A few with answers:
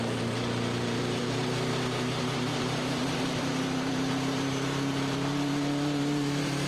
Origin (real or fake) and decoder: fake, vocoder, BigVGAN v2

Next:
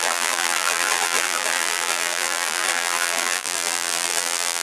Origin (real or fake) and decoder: fake, vocoder, BigVGAN v2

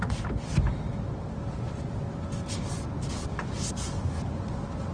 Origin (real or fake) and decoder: real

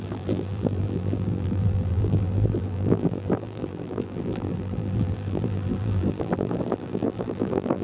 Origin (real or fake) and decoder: fake, vocoder, BigVGAN v2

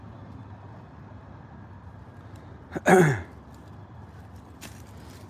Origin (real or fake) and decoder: real